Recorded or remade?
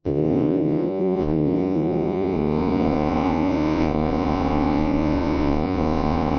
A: remade